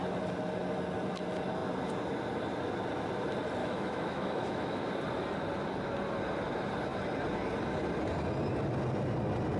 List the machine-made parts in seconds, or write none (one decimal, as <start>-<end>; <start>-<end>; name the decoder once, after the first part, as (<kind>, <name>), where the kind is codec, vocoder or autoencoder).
3.6-4.9 (autoencoder, DAC-VAE)